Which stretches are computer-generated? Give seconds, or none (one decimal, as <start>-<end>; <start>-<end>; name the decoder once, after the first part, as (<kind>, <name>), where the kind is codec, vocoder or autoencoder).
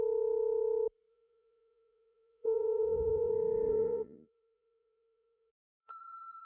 1.1-3.3 (vocoder, Vocos); 3.7-6.5